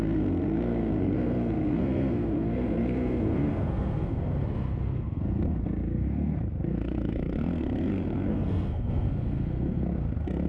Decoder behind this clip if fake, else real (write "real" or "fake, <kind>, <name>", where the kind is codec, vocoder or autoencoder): fake, codec, SNAC